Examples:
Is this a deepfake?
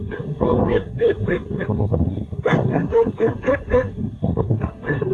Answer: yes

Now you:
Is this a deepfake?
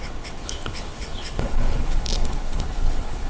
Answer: yes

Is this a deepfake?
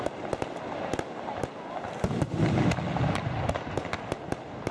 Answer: no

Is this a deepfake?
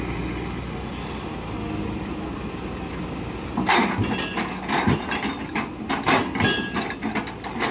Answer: no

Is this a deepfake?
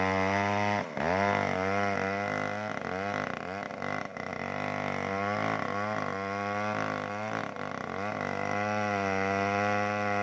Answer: no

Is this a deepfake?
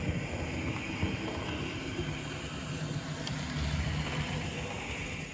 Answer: no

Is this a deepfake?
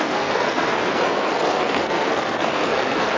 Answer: yes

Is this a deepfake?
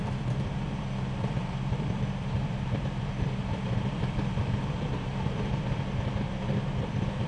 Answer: yes